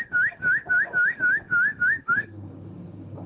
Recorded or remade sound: remade